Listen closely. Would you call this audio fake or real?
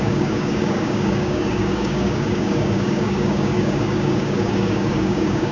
fake